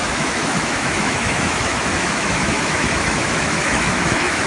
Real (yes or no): no